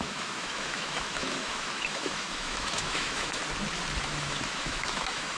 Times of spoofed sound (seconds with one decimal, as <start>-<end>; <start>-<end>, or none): 0.0-3.4; 4.0-5.4